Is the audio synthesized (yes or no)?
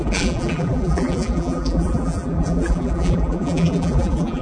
yes